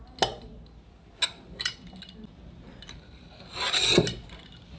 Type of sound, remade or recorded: recorded